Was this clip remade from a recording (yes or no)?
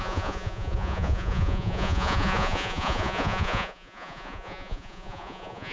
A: yes